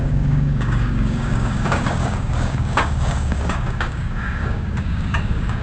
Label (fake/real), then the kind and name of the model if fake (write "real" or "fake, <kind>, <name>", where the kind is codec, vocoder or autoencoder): fake, codec, DAC